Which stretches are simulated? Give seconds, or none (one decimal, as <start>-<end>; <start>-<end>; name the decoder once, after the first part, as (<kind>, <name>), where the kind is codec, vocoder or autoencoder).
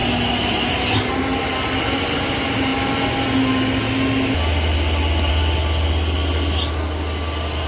none